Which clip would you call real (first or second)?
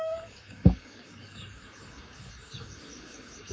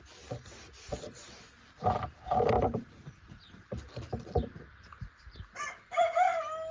second